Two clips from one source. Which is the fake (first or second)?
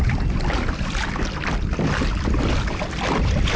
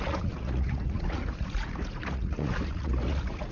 second